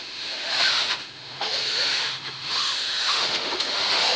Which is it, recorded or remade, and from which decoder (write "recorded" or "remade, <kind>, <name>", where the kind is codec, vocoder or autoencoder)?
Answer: remade, autoencoder, DAC-VAE